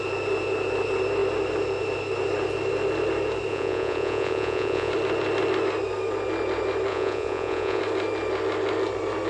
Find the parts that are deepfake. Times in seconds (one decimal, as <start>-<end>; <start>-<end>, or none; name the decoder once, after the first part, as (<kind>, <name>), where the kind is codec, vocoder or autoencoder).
3.5-4.9 (vocoder, Vocos); 6.9-7.8